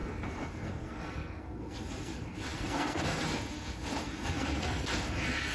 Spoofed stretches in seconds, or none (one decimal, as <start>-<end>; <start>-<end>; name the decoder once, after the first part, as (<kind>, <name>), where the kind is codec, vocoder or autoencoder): 0.0-5.5 (codec, SNAC)